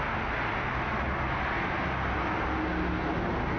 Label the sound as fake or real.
real